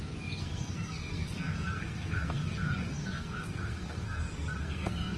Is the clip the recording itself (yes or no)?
no